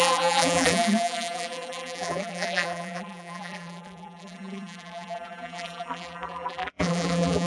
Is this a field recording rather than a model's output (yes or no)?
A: no